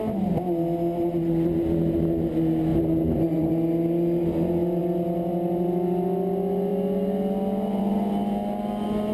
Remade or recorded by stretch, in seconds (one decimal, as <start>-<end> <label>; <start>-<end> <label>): 0.0-2.7 recorded; 2.7-3.5 remade; 3.5-9.1 recorded

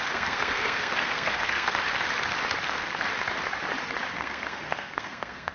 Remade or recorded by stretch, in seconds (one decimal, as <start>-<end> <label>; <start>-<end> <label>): 0.0-1.8 remade; 1.8-2.6 recorded; 2.6-3.1 remade; 3.1-4.2 recorded; 4.2-5.5 remade

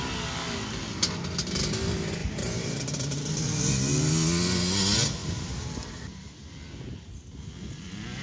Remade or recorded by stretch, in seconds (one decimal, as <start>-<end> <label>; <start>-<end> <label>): 0.0-2.2 recorded; 2.2-2.7 remade; 2.7-5.2 recorded; 5.2-7.5 remade; 7.5-8.2 recorded

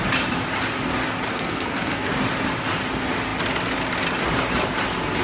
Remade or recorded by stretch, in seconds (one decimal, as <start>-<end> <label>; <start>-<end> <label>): 0.0-1.3 recorded; 1.3-2.1 remade; 2.1-5.2 recorded

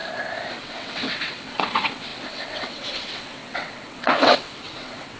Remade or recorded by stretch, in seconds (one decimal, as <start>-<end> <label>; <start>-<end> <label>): 0.0-0.5 recorded; 0.5-5.2 remade

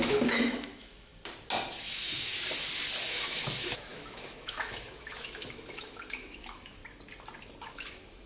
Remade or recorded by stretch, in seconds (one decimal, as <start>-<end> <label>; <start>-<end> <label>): 0.0-1.1 remade; 1.1-1.8 recorded; 1.8-2.3 remade; 2.3-3.0 recorded; 3.0-6.8 remade; 6.8-7.6 recorded; 7.6-8.3 remade

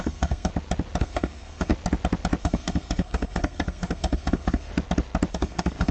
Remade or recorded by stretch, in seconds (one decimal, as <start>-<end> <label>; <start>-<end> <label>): 0.0-0.5 remade; 0.5-1.0 recorded; 1.0-1.7 remade; 1.7-2.4 recorded; 2.4-4.7 remade; 4.7-5.3 recorded; 5.3-5.9 remade

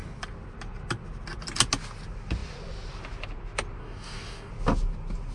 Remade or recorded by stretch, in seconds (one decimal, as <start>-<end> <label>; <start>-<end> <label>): 0.0-3.8 recorded; 3.8-4.5 remade; 4.5-5.3 recorded